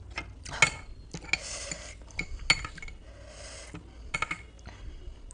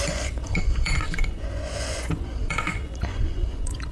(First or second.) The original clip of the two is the first